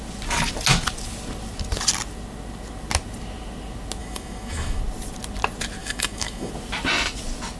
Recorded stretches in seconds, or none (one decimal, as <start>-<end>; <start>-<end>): 0.0-4.0; 4.8-5.8; 6.5-7.6